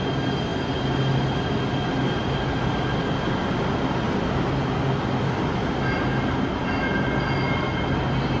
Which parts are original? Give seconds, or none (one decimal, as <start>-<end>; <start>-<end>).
0.0-8.4

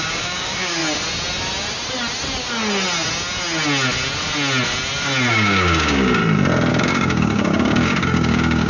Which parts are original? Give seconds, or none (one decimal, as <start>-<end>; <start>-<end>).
0.8-5.3; 6.2-6.7

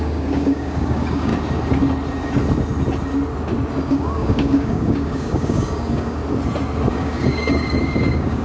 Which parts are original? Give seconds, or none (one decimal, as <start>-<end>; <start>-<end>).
1.3-3.9; 6.2-6.9

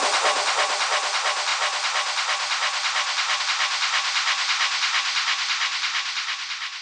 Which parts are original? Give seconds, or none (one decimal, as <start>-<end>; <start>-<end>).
0.0-6.8

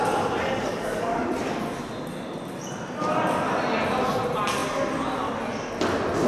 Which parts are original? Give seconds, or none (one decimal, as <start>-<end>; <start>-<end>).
0.0-0.6; 1.3-6.3